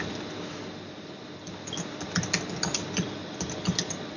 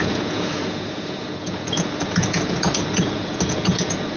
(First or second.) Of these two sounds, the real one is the first